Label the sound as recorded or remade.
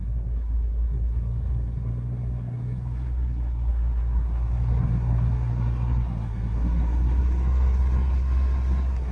remade